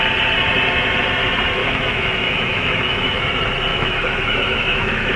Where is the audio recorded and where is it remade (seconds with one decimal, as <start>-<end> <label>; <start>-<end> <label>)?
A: 0.0-1.6 recorded; 1.6-3.2 remade; 3.2-3.7 recorded; 3.7-5.2 remade